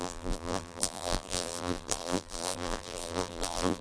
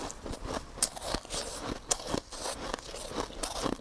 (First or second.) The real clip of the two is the second